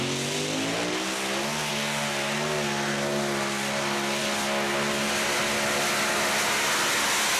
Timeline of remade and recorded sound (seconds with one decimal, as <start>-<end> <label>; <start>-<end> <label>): 0.0-7.4 recorded